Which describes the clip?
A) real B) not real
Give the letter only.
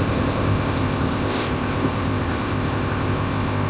B